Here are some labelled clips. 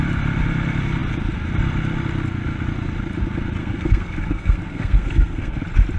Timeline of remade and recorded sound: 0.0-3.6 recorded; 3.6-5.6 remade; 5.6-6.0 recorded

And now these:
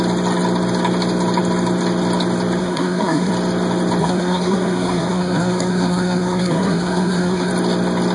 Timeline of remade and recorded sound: 0.0-2.6 recorded; 2.6-3.3 remade; 3.3-4.0 recorded; 4.0-7.5 remade; 7.5-8.1 recorded